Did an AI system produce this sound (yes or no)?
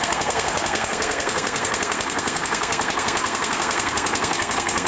yes